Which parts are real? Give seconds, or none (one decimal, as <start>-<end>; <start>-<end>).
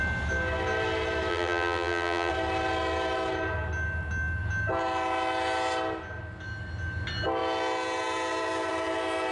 0.0-1.3; 2.3-9.3